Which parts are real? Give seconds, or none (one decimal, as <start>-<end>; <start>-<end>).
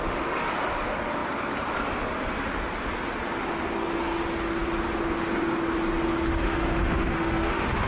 0.5-6.3